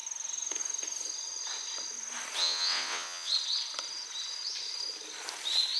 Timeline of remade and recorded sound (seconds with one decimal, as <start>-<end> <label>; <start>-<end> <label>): 0.0-2.4 recorded; 2.4-3.3 remade; 3.3-5.8 recorded